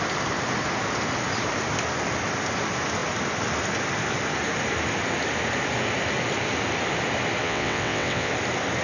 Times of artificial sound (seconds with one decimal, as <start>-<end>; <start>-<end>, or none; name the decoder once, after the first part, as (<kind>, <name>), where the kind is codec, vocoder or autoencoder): 7.4-8.3 (vocoder, WaveNeXt)